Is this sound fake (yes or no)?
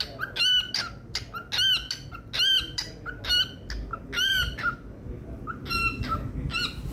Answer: no